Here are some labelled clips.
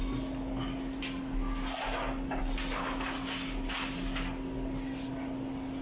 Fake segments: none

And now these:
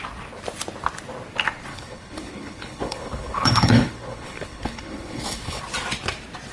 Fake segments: 1.7-5.6